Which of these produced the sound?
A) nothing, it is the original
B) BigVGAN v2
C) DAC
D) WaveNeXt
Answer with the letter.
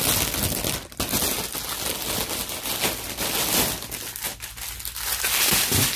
A